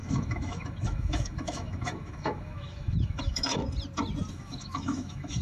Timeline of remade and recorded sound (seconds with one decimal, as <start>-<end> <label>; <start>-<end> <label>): 0.0-3.6 remade; 3.6-4.3 recorded; 4.3-5.4 remade